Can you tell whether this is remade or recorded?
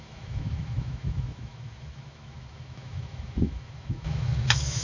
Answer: remade